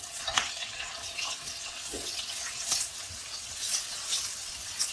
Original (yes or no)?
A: no